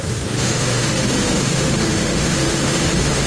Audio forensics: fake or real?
fake